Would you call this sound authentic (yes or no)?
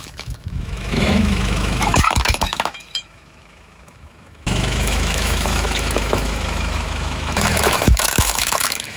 no